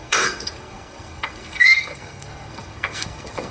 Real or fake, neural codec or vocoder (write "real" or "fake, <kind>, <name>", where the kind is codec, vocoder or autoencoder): fake, codec, SNAC